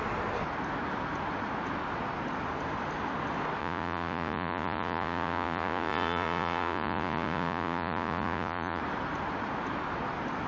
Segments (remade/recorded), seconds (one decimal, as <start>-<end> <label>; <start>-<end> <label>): 0.0-3.6 recorded; 3.6-8.8 remade; 8.8-10.5 recorded